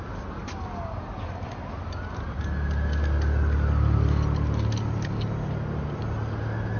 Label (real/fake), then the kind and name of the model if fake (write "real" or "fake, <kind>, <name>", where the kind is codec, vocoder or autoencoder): real